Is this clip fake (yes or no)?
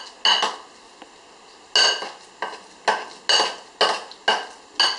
no